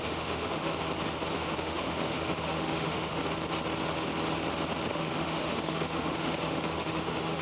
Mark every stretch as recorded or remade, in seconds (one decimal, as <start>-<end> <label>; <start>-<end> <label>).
0.0-0.7 remade; 0.7-1.3 recorded; 1.3-3.2 remade; 3.2-4.9 recorded; 4.9-7.4 remade